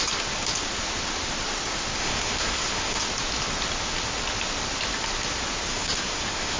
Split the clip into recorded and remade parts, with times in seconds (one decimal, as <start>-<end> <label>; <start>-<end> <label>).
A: 0.0-2.0 recorded; 2.0-3.0 remade; 3.0-5.7 recorded; 5.7-6.6 remade